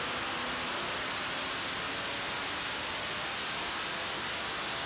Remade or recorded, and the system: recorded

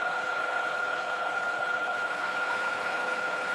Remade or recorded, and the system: remade, codec, HILCodec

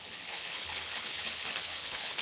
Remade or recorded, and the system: remade, codec, HILCodec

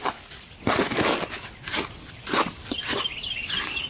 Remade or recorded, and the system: recorded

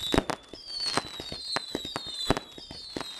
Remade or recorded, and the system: recorded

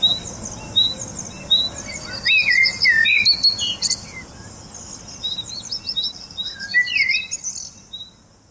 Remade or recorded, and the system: recorded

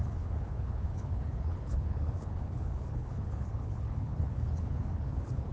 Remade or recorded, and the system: remade, codec, HILCodec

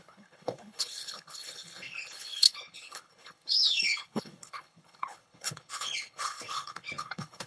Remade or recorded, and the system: remade, codec, HILCodec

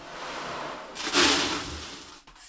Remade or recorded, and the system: recorded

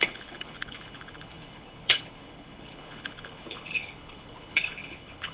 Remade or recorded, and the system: remade, codec, HILCodec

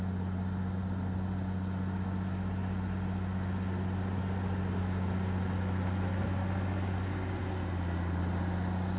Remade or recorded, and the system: recorded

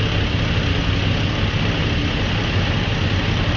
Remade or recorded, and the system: recorded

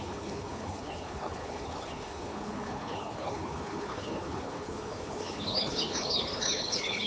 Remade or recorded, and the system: remade, codec, HILCodec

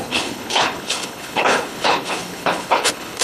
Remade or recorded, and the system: remade, codec, HILCodec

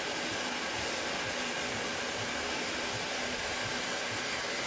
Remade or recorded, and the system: recorded